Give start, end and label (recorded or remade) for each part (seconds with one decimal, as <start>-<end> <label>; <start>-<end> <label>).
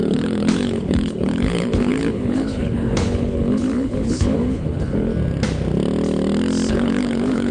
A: 0.0-5.1 remade; 5.1-6.7 recorded; 6.7-7.5 remade